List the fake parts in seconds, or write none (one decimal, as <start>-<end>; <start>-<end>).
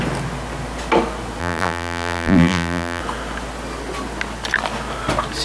1.4-3.0